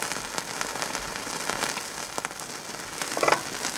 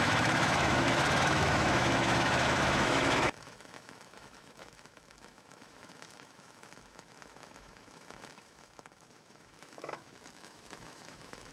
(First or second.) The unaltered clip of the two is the first